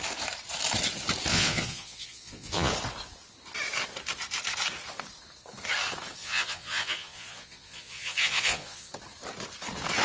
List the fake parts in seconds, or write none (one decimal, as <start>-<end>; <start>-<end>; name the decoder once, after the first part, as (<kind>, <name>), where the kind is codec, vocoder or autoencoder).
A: 1.3-2.7 (vocoder, Vocos); 6.2-8.9